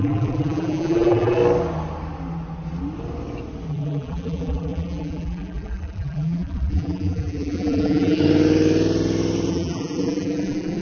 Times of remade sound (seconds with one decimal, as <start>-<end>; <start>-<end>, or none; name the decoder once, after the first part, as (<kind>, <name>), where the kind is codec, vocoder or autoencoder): 0.0-1.4 (vocoder, BigVGAN v2); 3.7-8.2; 9.5-10.8